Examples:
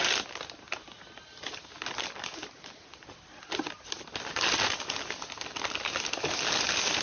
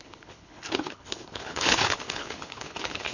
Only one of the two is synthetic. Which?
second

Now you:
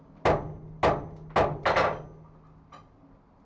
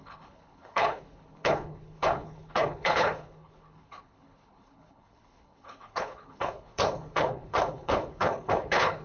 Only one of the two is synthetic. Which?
second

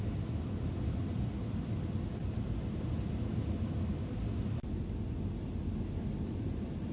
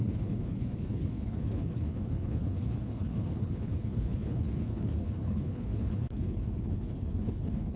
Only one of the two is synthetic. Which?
second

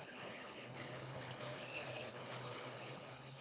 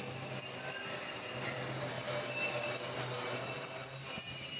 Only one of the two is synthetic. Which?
first